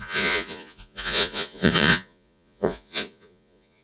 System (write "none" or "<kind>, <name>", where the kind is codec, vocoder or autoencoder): vocoder, Vocos